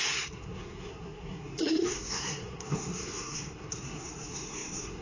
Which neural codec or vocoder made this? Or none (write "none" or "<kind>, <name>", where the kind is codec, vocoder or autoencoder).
codec, SNAC